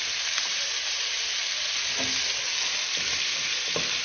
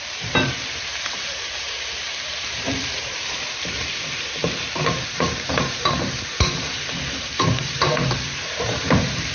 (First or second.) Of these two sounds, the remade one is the second